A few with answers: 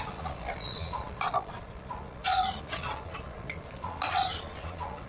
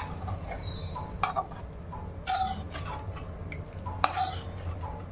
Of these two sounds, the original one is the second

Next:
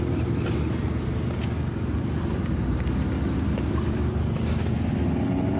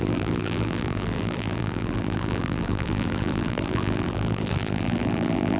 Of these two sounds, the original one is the first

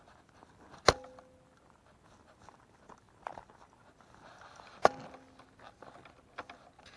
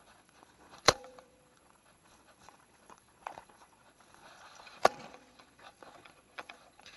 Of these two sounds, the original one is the first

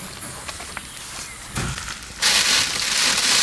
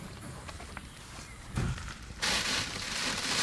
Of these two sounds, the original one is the first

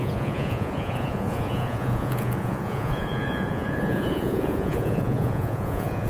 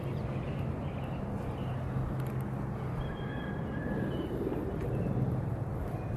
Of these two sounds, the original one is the second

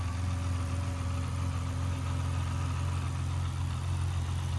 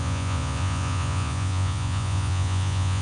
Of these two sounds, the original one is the first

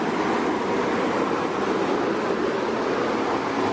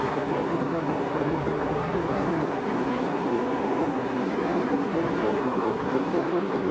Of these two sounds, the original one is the first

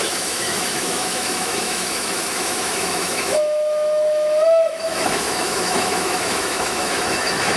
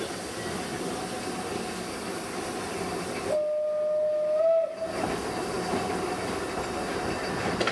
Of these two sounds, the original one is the second